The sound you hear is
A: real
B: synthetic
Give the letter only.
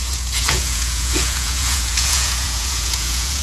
B